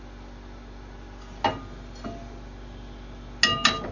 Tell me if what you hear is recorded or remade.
recorded